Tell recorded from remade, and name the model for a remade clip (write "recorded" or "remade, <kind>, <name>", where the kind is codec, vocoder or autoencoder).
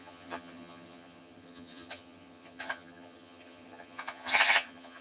remade, vocoder, HiFi-GAN